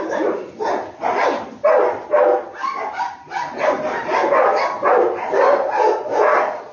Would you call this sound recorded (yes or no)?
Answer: yes